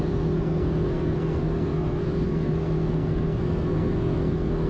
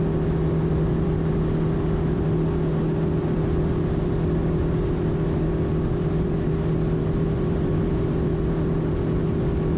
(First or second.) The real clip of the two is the second